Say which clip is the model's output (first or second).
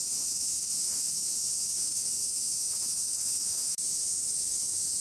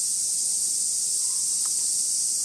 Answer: first